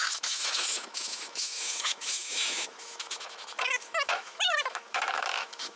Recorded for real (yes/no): no